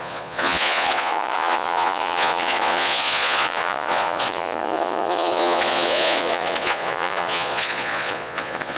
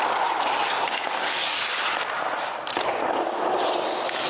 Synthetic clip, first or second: first